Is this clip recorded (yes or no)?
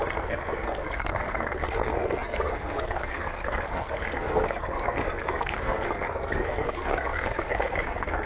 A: no